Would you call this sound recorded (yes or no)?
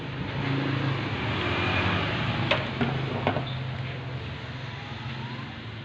yes